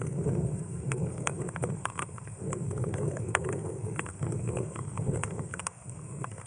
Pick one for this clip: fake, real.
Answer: fake